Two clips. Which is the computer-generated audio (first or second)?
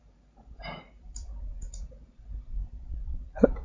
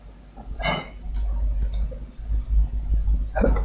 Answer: first